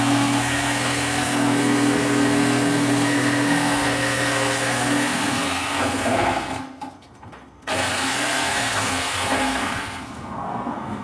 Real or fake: fake